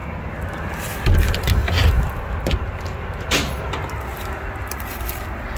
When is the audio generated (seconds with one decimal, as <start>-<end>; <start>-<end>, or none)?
none